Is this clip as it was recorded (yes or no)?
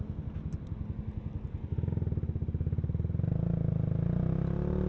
yes